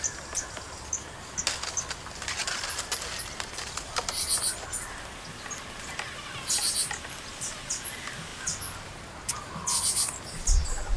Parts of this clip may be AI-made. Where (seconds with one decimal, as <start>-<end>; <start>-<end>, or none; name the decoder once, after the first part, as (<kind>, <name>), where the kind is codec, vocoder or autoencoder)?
none